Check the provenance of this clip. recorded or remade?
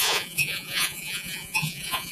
remade